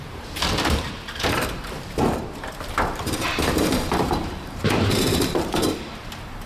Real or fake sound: fake